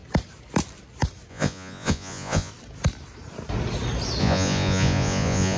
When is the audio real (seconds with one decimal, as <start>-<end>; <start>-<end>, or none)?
0.0-1.3; 2.5-4.2